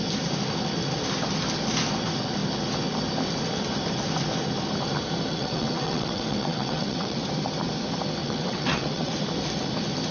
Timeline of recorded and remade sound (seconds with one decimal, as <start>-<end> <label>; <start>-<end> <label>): 0.0-5.3 recorded; 5.3-7.3 remade; 7.3-8.2 recorded; 8.2-9.1 remade; 9.1-10.1 recorded